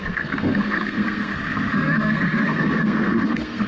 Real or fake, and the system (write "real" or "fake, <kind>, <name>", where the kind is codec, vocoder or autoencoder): fake, codec, SNAC